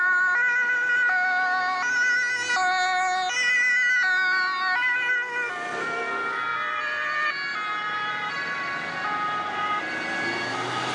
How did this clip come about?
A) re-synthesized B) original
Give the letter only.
B